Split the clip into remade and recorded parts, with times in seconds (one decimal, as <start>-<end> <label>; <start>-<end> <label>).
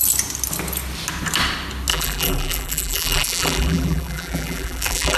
0.0-1.9 recorded; 1.9-5.2 remade